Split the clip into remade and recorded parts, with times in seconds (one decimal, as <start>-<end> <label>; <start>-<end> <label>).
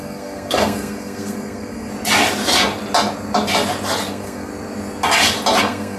0.0-1.9 remade; 1.9-4.1 recorded; 4.1-4.5 remade; 4.5-5.6 recorded; 5.6-6.0 remade